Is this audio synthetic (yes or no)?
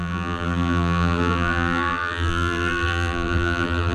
yes